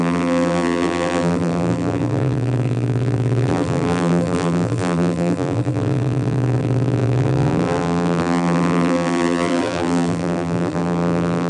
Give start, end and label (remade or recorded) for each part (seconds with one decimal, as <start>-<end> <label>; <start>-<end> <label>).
0.0-11.5 remade